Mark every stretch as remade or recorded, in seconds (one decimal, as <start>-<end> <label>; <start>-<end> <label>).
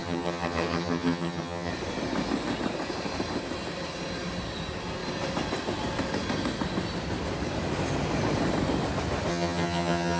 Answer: 0.0-1.7 remade; 1.7-9.3 recorded; 9.3-10.2 remade